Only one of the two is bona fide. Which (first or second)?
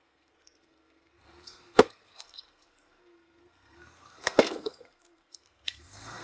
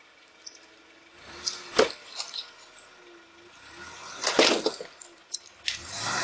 second